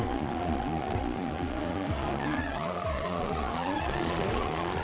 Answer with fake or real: fake